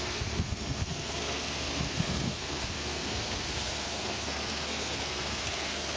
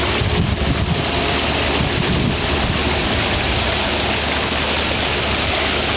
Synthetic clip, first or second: first